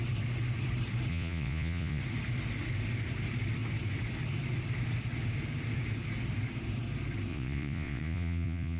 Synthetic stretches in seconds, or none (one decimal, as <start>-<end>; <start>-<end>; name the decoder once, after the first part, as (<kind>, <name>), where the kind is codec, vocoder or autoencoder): 1.1-2.0 (vocoder, Vocos); 7.3-8.8